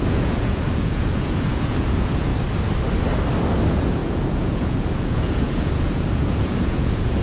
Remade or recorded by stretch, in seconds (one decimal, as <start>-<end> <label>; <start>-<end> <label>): 0.0-2.3 remade; 2.3-3.6 recorded; 3.6-7.2 remade